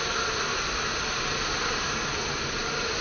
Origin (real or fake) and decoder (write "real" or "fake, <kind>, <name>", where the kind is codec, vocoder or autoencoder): real